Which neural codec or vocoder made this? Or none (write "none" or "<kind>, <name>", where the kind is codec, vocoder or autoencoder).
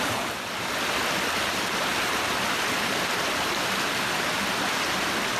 none